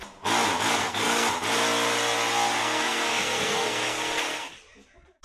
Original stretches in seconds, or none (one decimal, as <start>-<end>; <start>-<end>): 0.0-0.8; 1.3-2.6; 4.5-5.2